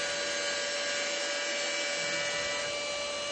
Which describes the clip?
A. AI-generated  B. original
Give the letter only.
B